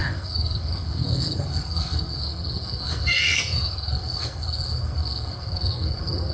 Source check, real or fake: fake